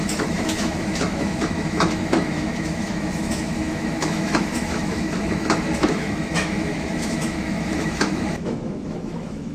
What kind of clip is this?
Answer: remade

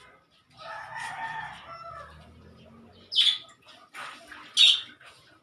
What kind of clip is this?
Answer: recorded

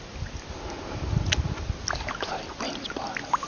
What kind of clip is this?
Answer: recorded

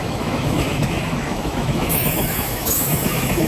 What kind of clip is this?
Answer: remade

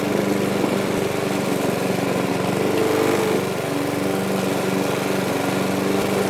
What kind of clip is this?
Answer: recorded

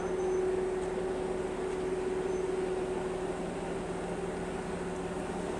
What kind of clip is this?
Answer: recorded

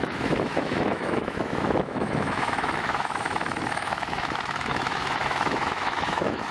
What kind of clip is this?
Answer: remade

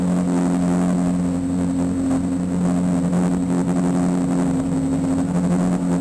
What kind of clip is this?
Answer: recorded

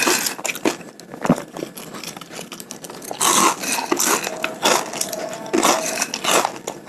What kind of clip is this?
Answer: recorded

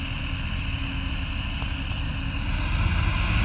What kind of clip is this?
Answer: recorded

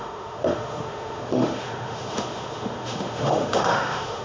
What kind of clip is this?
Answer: remade